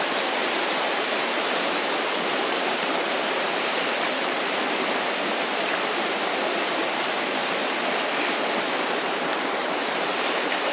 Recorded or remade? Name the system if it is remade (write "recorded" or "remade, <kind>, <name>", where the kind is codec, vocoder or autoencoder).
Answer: remade, vocoder, BigVGAN v2